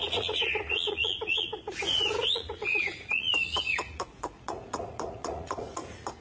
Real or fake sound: fake